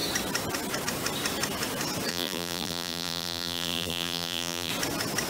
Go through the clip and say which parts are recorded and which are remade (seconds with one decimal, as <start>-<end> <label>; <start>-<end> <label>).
0.0-2.1 recorded; 2.1-4.7 remade; 4.7-5.3 recorded